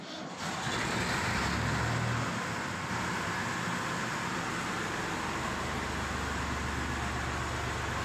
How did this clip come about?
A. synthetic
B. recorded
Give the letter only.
B